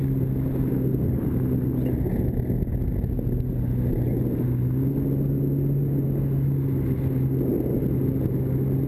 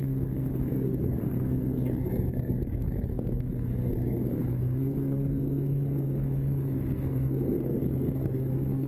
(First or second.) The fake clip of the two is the second